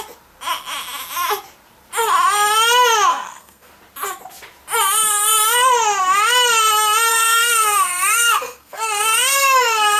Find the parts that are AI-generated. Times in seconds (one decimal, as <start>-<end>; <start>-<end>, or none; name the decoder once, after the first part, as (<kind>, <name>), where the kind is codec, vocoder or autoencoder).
3.1-3.7 (codec, SNAC); 7.1-10.0